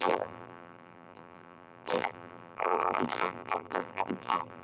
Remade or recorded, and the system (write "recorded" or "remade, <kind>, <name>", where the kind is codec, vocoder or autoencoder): remade, vocoder, BigVGAN v2